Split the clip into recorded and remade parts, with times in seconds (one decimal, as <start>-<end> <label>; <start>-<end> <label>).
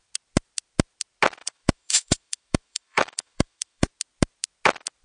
0.0-1.4 recorded; 1.4-3.9 remade; 3.9-5.0 recorded